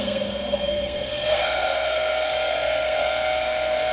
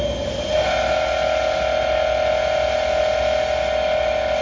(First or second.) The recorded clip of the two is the second